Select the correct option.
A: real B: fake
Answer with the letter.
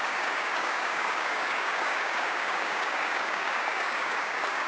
B